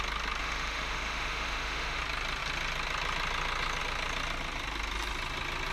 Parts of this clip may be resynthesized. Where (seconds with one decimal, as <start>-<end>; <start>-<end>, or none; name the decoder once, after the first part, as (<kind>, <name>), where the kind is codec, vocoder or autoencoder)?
0.4-2.0 (autoencoder, DAC-VAE)